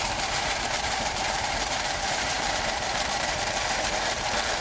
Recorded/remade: remade